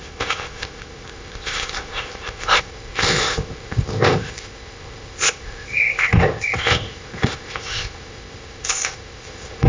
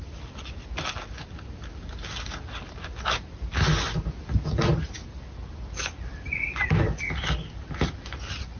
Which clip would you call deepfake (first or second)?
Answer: first